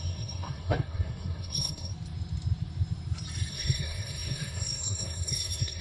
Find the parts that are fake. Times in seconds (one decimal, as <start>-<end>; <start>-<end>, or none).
0.0-1.9; 3.5-5.8

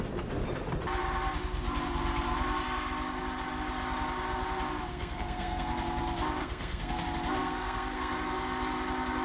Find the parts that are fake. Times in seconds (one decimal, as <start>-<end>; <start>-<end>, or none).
4.9-5.7; 6.4-7.0; 7.4-8.1

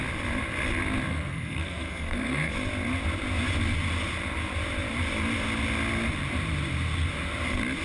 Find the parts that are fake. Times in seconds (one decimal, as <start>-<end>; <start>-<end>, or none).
1.1-2.5

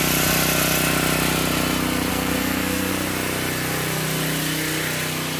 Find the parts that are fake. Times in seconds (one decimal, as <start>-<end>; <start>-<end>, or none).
2.1-2.9

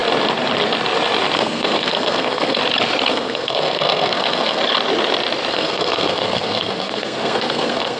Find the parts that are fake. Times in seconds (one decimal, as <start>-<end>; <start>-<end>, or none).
1.4-2.6; 3.1-4.6; 5.5-8.0

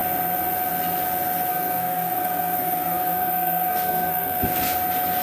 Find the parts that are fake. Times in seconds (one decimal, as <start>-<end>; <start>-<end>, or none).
1.5-4.6

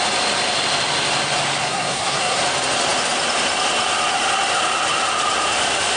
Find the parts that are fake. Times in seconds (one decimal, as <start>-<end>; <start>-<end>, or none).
1.6-2.4